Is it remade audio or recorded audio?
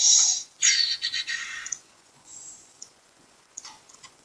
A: remade